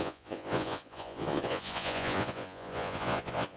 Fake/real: fake